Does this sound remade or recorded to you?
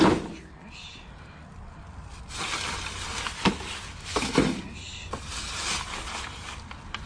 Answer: recorded